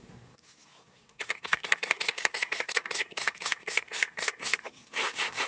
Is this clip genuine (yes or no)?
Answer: no